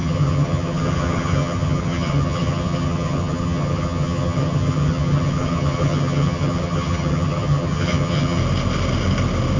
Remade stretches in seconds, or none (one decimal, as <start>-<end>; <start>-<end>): 0.0-8.4